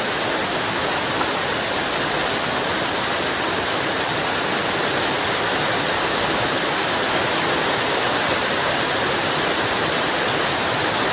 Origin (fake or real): real